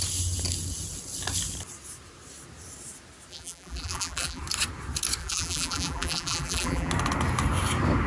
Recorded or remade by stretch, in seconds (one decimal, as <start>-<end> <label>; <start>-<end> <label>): 0.0-3.3 recorded; 3.3-4.4 remade; 4.4-5.2 recorded; 5.2-6.9 remade; 6.9-8.1 recorded